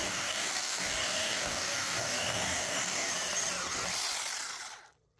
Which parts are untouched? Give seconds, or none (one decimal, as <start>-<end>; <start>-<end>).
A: 3.1-5.2